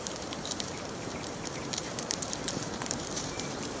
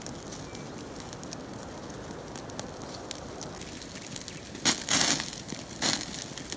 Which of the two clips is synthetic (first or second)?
first